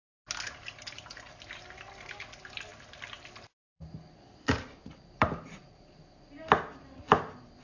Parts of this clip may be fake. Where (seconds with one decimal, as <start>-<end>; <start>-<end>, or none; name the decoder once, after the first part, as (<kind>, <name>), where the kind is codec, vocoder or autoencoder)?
4.8-5.9 (vocoder, BigVGAN v2)